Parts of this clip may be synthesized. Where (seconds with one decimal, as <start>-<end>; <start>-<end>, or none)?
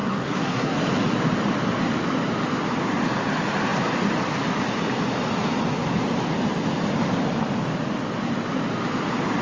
0.0-0.8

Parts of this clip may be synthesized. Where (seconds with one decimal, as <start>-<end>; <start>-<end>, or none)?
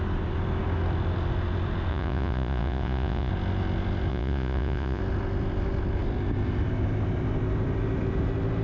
1.9-3.3; 4.1-5.0